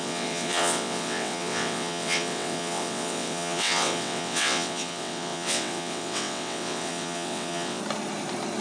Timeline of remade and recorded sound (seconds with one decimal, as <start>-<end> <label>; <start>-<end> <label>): 0.0-7.8 remade; 7.8-8.6 recorded